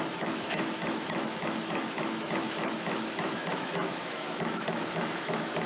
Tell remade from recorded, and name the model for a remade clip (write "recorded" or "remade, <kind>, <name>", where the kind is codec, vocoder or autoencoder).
remade, autoencoder, DAC-VAE